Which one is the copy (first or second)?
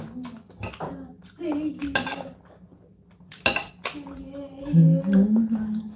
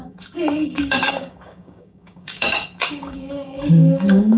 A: second